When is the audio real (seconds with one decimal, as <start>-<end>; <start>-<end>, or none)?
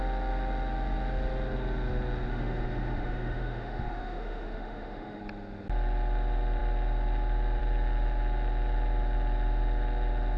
0.0-2.3; 5.2-10.4